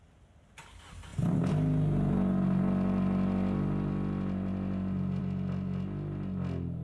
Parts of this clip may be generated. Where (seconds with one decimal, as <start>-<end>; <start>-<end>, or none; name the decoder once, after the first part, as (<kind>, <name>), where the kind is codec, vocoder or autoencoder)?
none